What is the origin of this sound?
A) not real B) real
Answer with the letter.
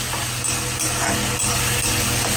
B